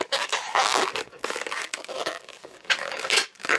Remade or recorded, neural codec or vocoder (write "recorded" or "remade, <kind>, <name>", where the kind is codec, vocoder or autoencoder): remade, codec, DAC